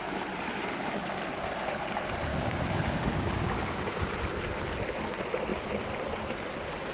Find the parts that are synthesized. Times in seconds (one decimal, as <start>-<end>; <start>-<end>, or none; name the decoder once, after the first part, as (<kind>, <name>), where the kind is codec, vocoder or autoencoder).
2.3-4.2 (codec, DAC)